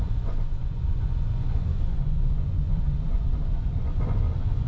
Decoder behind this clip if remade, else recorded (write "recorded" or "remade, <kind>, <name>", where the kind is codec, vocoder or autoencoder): remade, vocoder, Vocos